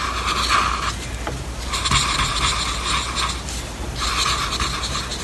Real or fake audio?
real